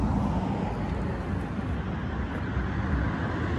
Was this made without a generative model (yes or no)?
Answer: yes